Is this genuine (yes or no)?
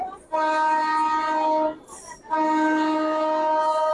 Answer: yes